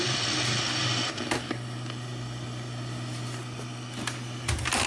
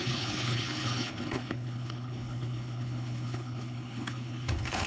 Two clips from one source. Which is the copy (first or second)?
second